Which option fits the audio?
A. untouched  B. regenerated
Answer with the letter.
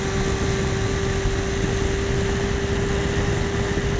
A